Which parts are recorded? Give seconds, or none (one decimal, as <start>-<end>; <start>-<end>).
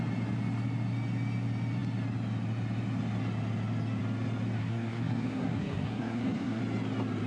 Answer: 0.0-4.6; 6.6-7.3